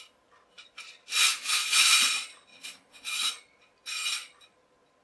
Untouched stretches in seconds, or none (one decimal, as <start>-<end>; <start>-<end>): 0.0-1.3; 2.0-2.5; 3.3-5.0